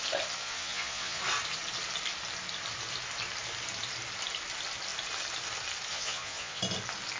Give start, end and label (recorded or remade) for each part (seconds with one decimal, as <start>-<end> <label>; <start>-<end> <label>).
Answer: 0.0-0.4 recorded; 0.4-1.2 remade; 1.2-5.9 recorded; 5.9-6.6 remade; 6.6-7.2 recorded